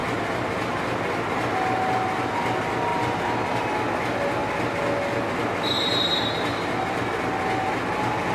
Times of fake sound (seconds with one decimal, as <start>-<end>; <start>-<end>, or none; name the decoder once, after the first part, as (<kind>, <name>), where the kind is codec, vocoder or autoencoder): 2.9-3.6 (vocoder, BigVGAN v2)